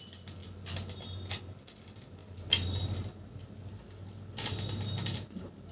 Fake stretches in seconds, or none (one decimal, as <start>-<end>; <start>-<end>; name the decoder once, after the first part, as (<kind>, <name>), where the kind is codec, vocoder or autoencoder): none